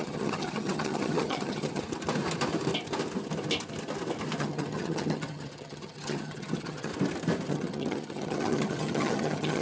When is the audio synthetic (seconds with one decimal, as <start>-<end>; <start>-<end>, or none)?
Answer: 0.0-1.8; 4.4-6.9; 7.5-9.6